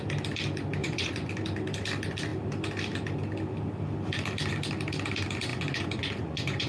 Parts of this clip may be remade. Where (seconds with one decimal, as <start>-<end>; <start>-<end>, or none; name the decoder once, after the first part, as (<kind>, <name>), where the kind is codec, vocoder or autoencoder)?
0.8-1.3 (vocoder, Vocos); 5.5-6.7